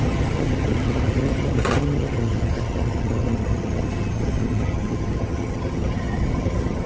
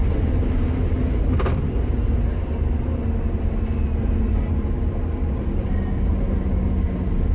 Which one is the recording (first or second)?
second